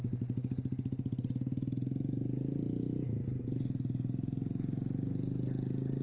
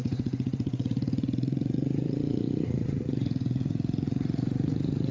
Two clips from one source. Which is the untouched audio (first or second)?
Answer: first